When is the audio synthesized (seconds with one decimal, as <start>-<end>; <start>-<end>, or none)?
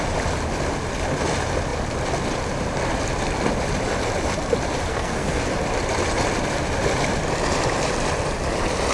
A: 4.9-5.5